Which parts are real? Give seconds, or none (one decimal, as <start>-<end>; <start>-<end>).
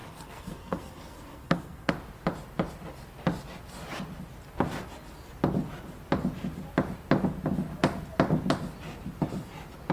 1.9-9.9